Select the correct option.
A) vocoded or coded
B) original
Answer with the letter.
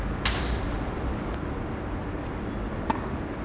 B